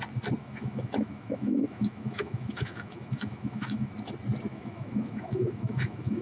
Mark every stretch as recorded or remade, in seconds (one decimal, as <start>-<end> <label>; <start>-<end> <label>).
0.0-0.4 recorded; 0.4-3.9 remade; 3.9-4.5 recorded; 4.5-6.2 remade